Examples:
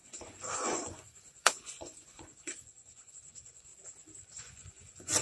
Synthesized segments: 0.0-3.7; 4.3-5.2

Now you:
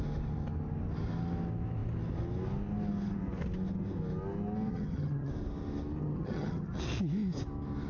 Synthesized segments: 4.7-5.3; 6.0-6.8